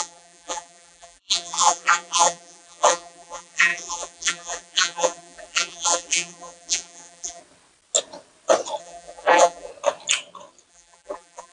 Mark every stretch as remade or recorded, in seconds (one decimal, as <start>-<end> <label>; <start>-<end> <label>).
0.0-7.4 remade; 7.4-8.8 recorded; 8.8-9.7 remade; 9.7-10.7 recorded; 10.7-11.5 remade

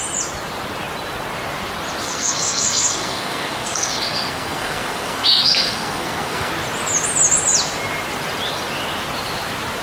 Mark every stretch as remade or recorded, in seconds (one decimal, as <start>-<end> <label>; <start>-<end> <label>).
0.0-2.0 recorded; 2.0-6.5 remade; 6.5-9.8 recorded

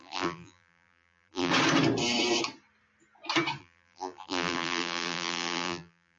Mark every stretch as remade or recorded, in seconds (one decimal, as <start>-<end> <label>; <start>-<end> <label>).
0.0-1.5 remade; 1.5-3.6 recorded; 3.6-6.2 remade